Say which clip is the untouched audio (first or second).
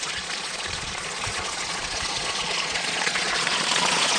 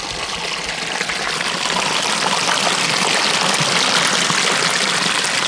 second